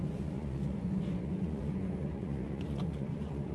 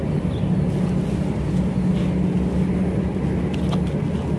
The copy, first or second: first